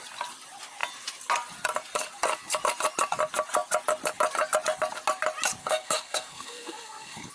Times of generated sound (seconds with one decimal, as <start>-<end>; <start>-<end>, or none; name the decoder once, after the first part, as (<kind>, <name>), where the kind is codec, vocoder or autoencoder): 5.6-7.3 (codec, SNAC)